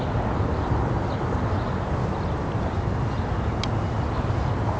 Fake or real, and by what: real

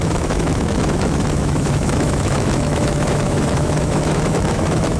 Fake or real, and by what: fake, autoencoder, DAC-VAE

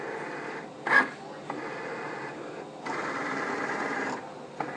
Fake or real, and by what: real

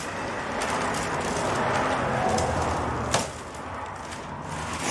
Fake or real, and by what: real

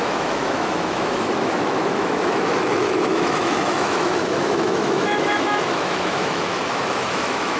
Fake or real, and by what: fake, autoencoder, DAC-VAE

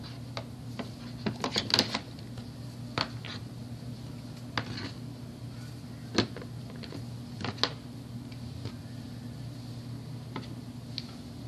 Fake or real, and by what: real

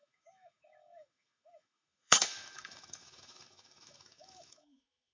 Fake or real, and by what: fake, autoencoder, DAC-VAE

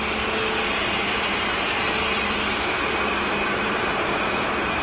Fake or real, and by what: real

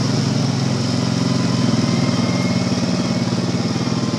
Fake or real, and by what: real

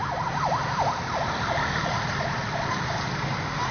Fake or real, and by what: real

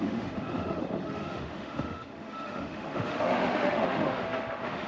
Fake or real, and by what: fake, autoencoder, DAC-VAE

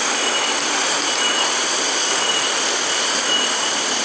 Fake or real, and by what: real